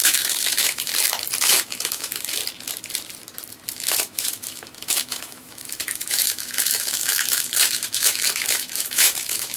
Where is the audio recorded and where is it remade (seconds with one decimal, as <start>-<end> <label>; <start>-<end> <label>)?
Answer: 0.0-0.9 remade; 0.9-1.4 recorded; 1.4-2.4 remade; 2.4-3.7 recorded; 3.7-9.6 remade